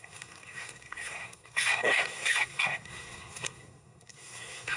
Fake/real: fake